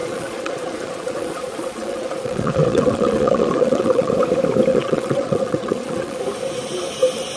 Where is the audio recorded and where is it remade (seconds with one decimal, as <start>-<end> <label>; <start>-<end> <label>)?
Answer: 0.0-4.1 remade; 4.1-4.7 recorded; 4.7-6.2 remade; 6.2-7.4 recorded